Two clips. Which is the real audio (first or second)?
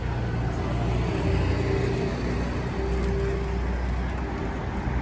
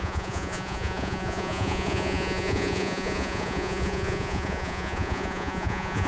first